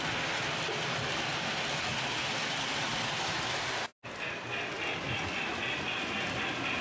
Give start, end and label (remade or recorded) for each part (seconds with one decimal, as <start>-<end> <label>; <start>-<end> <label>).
0.0-6.8 recorded